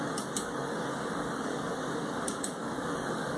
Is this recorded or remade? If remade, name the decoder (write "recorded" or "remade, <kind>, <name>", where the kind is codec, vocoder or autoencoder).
remade, codec, DAC